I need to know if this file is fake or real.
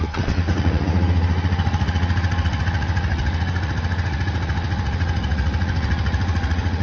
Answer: fake